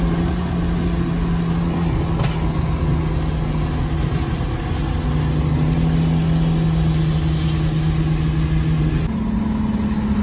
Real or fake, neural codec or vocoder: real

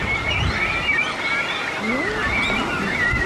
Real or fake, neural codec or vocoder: real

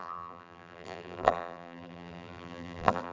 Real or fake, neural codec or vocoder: fake, vocoder, BigVGAN v2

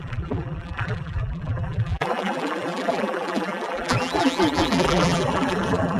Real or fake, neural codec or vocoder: fake, vocoder, BigVGAN v2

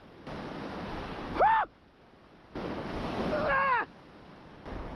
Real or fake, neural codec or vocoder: real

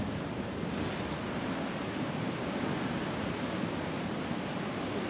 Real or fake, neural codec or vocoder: real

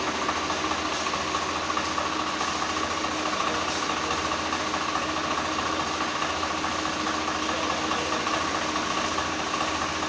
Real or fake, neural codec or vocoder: real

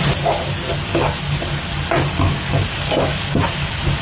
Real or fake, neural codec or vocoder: real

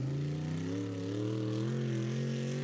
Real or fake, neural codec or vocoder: real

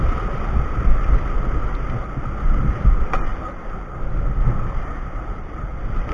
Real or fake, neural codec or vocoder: fake, vocoder, BigVGAN v2